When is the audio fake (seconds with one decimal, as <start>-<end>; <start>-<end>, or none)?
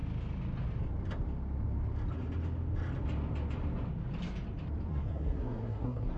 4.9-6.2